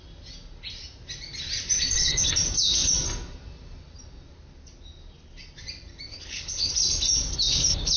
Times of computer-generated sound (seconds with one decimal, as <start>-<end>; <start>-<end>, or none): 6.1-6.8